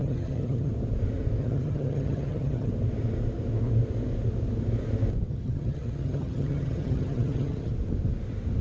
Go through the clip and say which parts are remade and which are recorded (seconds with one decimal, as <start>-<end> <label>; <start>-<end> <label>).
0.0-0.7 remade; 0.7-1.4 recorded; 1.4-2.7 remade; 2.7-5.3 recorded; 5.3-7.7 remade; 7.7-8.6 recorded